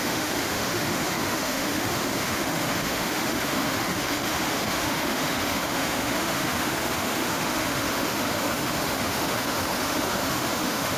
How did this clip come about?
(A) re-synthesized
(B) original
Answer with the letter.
A